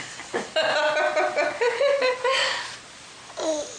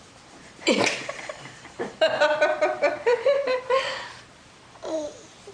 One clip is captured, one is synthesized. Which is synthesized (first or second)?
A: second